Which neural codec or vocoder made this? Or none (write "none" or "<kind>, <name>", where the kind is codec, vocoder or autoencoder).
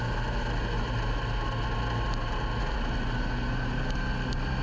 none